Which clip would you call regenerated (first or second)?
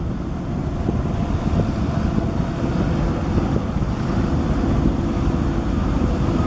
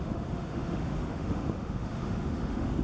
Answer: second